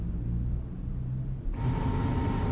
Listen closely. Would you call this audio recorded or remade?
recorded